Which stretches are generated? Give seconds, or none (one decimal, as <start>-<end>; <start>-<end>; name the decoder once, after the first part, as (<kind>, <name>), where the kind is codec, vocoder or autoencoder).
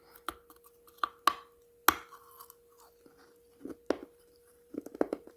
4.0-5.4 (vocoder, BigVGAN v2)